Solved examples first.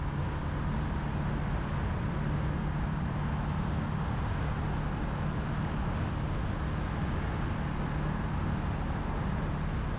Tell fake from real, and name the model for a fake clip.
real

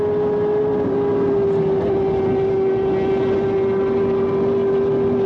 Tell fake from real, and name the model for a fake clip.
real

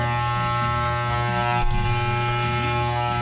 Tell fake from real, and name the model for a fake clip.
real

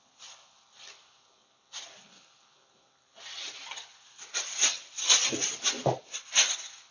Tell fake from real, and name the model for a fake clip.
real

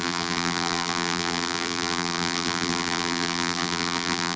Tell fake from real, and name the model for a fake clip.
fake, vocoder, BigVGAN v2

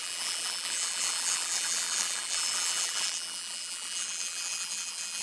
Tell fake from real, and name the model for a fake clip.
fake, vocoder, BigVGAN v2